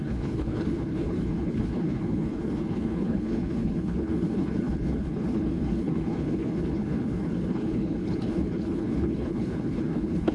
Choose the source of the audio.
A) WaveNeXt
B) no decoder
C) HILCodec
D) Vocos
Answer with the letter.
C